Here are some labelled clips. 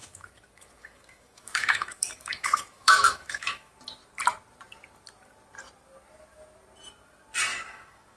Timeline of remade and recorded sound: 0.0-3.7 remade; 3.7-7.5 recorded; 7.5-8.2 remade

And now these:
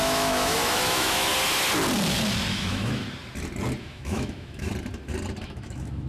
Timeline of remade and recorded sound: 0.0-1.3 remade; 1.3-2.5 recorded; 2.5-3.0 remade; 3.0-3.8 recorded; 3.8-4.7 remade; 4.7-5.4 recorded; 5.4-6.1 remade

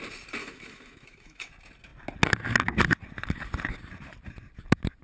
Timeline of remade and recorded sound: 0.0-0.4 recorded; 0.4-1.5 remade; 1.5-5.0 recorded

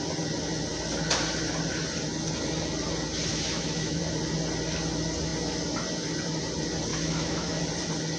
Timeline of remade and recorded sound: 0.0-3.3 recorded; 3.3-4.0 remade; 4.0-6.9 recorded; 6.9-7.6 remade; 7.6-8.2 recorded

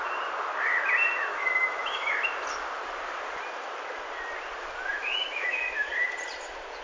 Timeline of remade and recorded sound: 0.0-1.3 recorded; 1.3-2.2 remade; 2.2-4.9 recorded; 4.9-5.9 remade; 5.9-6.8 recorded